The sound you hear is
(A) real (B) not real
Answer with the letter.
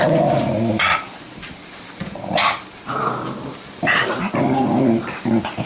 B